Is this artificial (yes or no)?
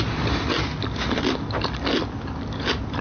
no